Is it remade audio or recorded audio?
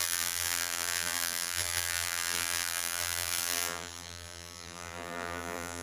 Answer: remade